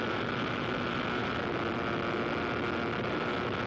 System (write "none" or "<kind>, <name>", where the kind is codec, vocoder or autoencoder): none